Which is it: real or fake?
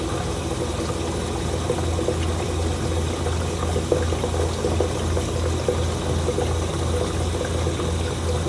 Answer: real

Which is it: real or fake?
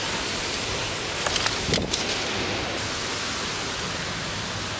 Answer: real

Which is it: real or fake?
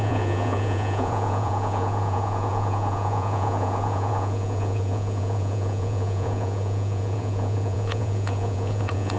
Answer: fake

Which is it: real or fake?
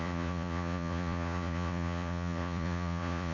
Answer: fake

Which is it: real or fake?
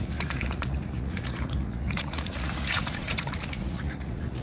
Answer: fake